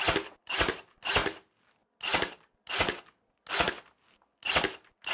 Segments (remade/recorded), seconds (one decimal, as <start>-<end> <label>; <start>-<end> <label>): 0.0-5.1 recorded